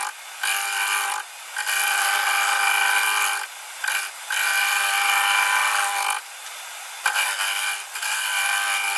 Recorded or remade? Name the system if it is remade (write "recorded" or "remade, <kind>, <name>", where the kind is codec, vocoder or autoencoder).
recorded